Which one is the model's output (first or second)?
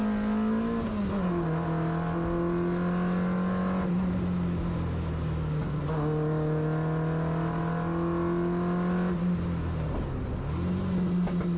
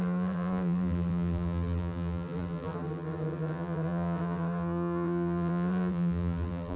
second